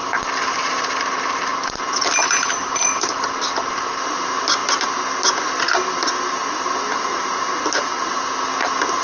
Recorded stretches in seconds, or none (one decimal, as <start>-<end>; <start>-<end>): 0.0-9.0